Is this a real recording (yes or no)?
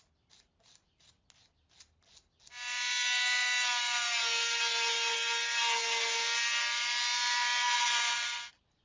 yes